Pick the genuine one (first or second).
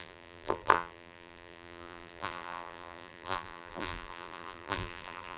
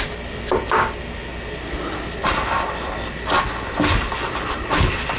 second